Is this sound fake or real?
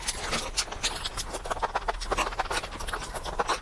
real